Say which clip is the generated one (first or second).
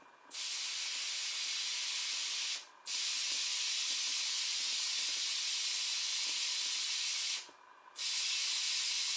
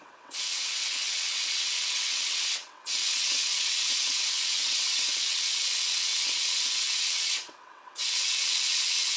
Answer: second